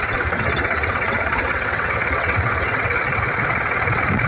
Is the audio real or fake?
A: fake